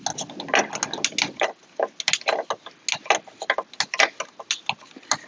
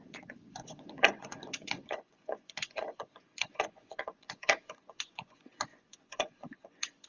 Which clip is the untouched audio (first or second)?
first